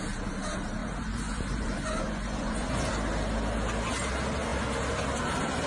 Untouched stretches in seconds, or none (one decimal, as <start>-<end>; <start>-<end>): 0.0-0.8; 2.9-5.7